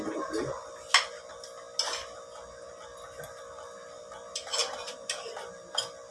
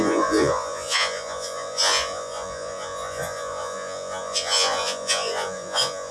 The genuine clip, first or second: first